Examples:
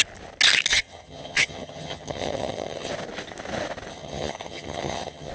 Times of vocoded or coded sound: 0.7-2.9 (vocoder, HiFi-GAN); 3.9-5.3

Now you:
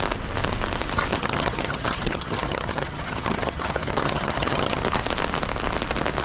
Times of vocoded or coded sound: 1.1-4.8 (vocoder, HiFi-GAN)

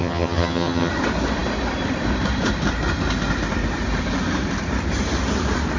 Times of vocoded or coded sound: 0.0-0.9 (vocoder, HiFi-GAN)